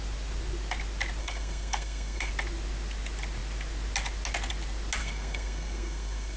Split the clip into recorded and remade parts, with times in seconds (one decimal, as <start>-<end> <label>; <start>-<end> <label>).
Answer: 0.0-1.2 recorded; 1.2-2.3 remade; 2.3-5.0 recorded; 5.0-6.4 remade